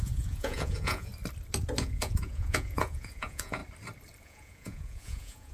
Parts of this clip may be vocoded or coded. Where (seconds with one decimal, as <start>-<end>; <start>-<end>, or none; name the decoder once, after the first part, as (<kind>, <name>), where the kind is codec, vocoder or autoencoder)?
0.0-1.1 (vocoder, Vocos); 1.8-3.6; 4.2-5.5